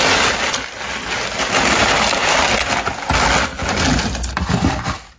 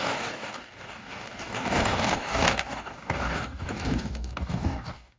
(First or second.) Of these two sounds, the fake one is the second